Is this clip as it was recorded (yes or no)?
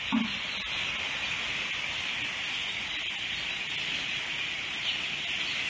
yes